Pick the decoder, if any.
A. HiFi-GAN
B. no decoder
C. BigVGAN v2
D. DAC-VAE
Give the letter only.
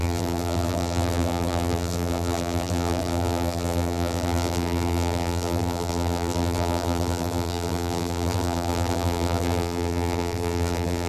C